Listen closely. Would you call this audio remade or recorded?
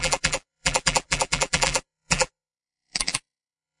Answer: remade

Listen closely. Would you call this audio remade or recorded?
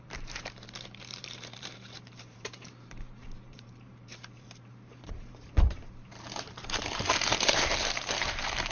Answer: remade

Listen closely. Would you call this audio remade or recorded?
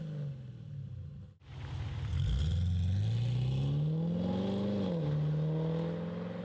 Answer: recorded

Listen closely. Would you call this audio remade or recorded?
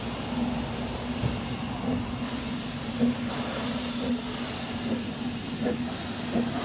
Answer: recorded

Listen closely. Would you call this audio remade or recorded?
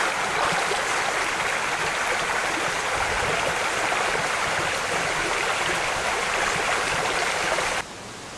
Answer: recorded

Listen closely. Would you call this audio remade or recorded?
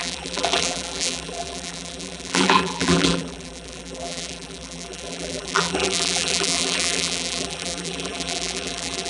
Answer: remade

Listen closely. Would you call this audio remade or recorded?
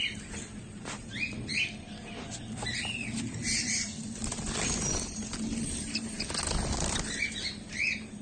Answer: recorded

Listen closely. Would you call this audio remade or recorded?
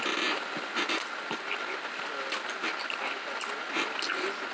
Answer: recorded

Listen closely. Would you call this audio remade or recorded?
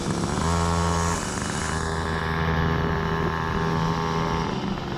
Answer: recorded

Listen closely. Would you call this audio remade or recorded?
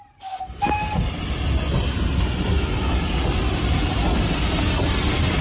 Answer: recorded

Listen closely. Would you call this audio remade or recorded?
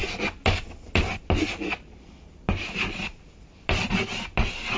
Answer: recorded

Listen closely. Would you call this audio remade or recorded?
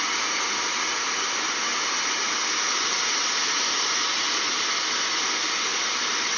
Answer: recorded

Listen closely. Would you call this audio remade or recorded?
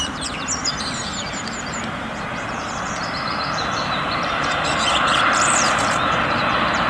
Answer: remade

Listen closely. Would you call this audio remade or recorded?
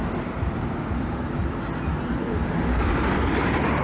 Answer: recorded